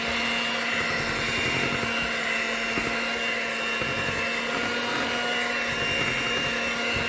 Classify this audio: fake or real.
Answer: real